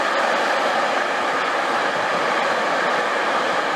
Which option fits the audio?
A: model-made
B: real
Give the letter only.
B